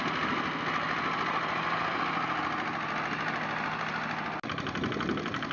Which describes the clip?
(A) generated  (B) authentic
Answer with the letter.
B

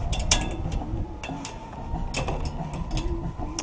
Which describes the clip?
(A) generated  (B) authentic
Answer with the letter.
B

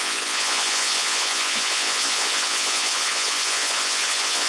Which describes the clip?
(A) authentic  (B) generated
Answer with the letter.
B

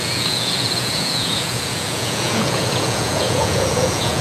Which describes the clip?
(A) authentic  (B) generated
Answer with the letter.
B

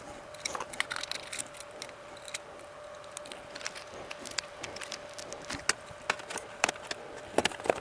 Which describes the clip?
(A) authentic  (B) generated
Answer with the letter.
A